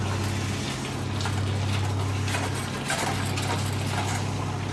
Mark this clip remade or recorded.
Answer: recorded